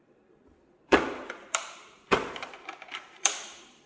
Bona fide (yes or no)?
no